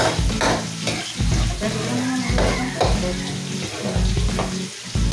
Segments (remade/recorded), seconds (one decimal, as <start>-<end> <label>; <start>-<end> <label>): 0.0-5.1 recorded